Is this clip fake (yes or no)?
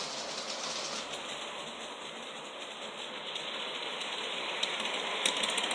no